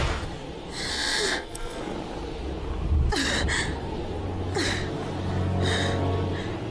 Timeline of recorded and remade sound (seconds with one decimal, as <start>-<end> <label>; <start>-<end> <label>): 0.0-0.9 recorded; 0.9-1.8 remade; 1.8-6.7 recorded